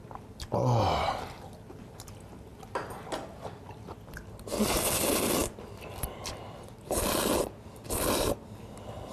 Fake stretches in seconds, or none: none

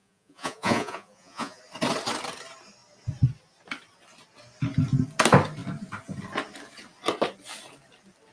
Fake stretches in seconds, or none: 0.0-1.6

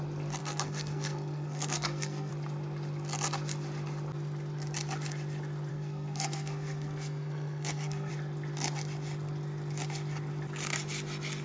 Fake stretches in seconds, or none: 0.4-2.3; 5.7-8.1